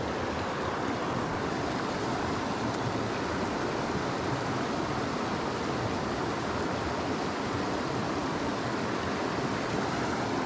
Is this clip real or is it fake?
real